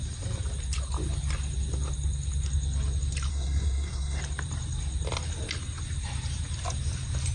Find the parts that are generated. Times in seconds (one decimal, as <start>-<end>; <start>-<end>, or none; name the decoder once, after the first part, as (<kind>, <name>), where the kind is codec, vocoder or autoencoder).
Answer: 3.3-4.2 (codec, SNAC)